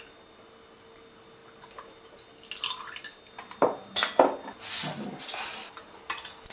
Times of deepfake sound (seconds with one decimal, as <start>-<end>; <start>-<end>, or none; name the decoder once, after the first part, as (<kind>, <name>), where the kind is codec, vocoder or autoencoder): none